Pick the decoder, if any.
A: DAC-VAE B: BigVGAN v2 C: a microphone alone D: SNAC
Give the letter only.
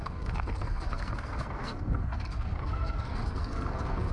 D